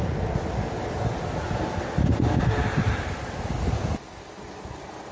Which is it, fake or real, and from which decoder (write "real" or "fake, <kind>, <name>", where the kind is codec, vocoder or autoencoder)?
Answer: real